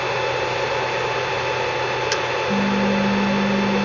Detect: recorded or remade recorded